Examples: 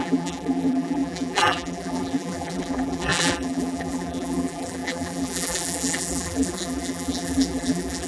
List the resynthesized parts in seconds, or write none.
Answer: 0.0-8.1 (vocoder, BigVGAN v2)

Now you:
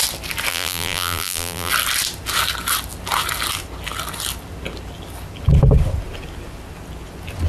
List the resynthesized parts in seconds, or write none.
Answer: 0.5-1.7 (vocoder, BigVGAN v2)

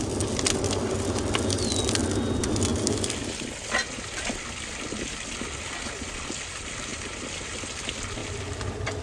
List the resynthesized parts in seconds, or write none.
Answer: 6.9-7.5 (vocoder, BigVGAN v2); 8.2-9.0

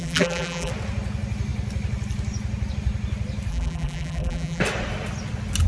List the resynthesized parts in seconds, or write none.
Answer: 0.0-0.7 (vocoder, BigVGAN v2); 3.5-4.6

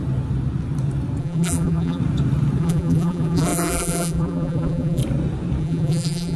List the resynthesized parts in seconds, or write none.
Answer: 1.2-2.0 (vocoder, BigVGAN v2); 2.6-5.0; 5.6-6.4

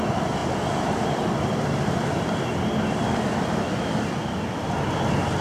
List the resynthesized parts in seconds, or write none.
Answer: 0.4-3.6 (vocoder, BigVGAN v2)